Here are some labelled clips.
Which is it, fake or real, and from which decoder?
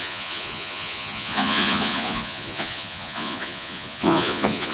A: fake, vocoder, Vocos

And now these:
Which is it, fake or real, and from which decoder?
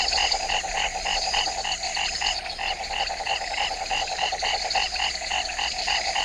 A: real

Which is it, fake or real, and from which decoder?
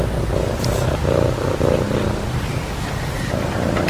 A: real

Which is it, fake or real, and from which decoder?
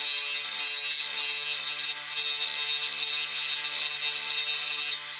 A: real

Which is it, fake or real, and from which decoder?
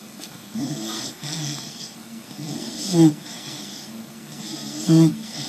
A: fake, codec, SNAC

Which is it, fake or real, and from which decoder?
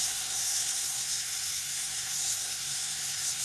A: fake, codec, SNAC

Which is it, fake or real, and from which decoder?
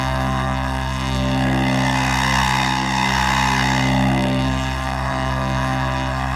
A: fake, codec, SNAC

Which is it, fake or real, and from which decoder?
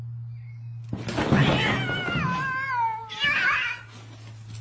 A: real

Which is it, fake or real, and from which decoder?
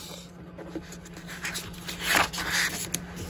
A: real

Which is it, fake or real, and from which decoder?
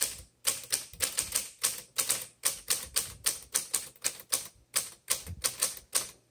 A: real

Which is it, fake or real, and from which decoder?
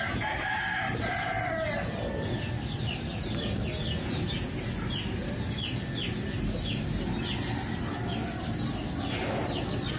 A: real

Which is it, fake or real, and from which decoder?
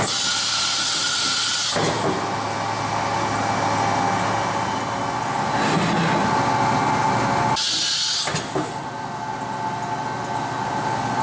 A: real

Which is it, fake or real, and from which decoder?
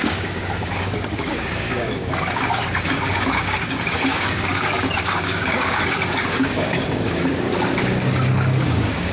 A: fake, codec, DAC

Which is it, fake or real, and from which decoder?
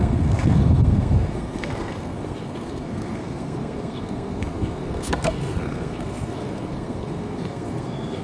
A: fake, codec, SNAC